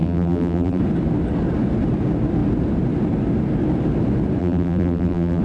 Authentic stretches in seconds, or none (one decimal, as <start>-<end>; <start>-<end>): 0.8-4.4